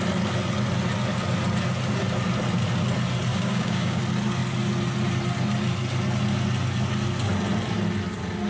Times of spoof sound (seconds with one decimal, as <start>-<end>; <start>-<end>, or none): 3.3-4.0